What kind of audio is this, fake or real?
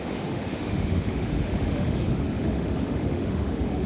fake